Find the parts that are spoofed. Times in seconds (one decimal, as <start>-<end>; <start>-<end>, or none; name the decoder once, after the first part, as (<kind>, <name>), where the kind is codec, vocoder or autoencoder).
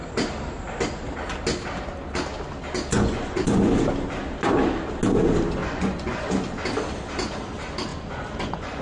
2.9-3.7 (vocoder, Vocos); 5.6-6.3; 7.9-8.8